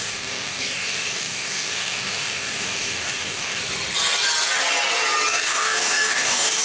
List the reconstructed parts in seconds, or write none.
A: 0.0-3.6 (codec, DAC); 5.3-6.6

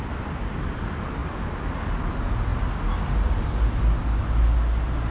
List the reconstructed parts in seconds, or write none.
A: none